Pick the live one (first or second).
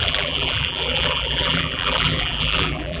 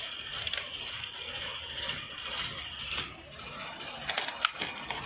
second